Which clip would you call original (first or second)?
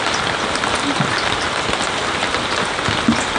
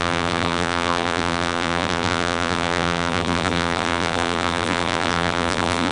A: first